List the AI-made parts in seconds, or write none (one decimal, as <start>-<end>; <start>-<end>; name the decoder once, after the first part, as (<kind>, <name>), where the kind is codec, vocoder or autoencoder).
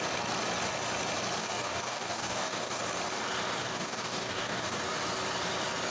1.4-2.8 (codec, DAC); 3.6-4.8